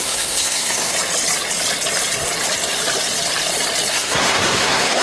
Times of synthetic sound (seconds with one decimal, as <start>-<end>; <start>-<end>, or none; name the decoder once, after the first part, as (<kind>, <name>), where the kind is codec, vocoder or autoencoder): 0.0-0.9 (codec, SNAC); 3.9-5.0